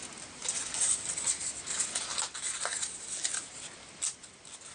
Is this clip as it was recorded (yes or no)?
yes